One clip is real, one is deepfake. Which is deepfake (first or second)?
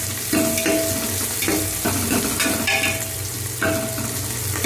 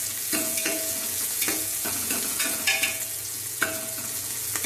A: second